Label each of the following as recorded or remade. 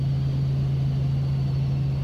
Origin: recorded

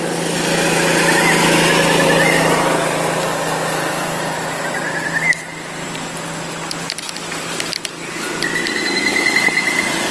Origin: recorded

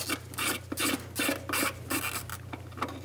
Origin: recorded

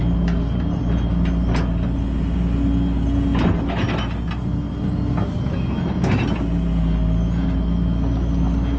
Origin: recorded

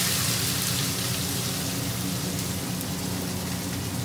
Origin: recorded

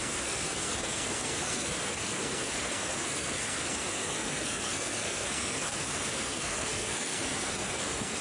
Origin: remade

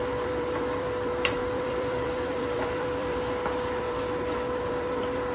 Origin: remade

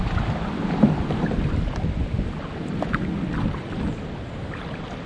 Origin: recorded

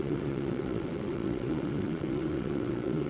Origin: remade